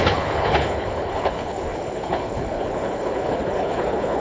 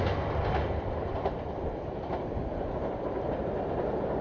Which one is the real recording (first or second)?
second